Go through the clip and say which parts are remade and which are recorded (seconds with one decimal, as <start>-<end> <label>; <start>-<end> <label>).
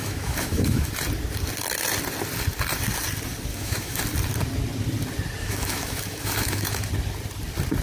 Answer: 0.0-0.9 remade; 0.9-3.5 recorded; 3.5-4.0 remade; 4.0-5.4 recorded; 5.4-6.9 remade; 6.9-7.8 recorded